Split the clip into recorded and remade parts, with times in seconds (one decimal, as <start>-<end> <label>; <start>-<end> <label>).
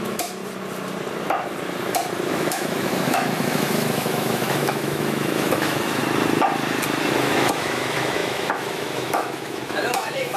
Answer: 0.0-0.4 remade; 0.4-2.3 recorded; 2.3-6.0 remade; 6.0-7.1 recorded; 7.1-10.4 remade